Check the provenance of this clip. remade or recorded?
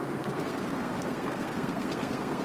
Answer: remade